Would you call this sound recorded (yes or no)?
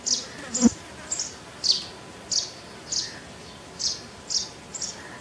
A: yes